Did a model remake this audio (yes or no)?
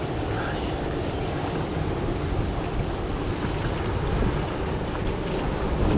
no